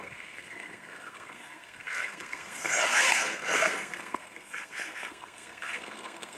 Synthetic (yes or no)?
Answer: yes